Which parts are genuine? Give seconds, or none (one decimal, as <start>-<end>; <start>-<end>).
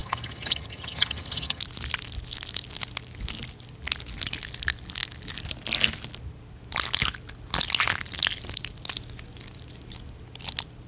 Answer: 1.6-10.9